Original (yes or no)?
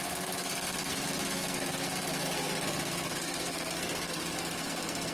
no